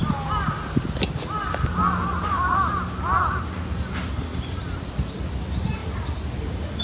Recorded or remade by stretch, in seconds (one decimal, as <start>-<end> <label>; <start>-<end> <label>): 0.0-6.8 recorded